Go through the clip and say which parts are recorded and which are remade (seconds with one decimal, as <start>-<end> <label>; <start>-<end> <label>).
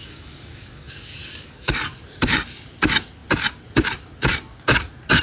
0.0-1.7 remade; 1.7-5.2 recorded